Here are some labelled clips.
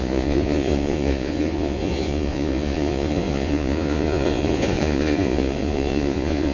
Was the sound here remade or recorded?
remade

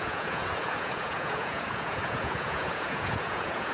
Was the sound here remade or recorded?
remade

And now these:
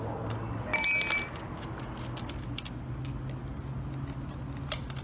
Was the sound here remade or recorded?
recorded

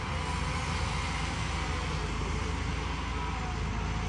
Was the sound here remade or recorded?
recorded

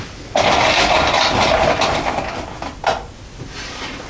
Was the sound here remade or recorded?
recorded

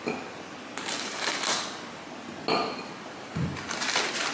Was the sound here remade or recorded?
recorded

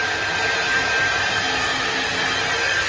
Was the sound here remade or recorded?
recorded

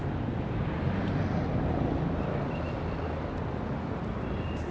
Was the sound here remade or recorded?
recorded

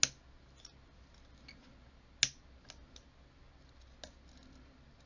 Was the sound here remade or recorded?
recorded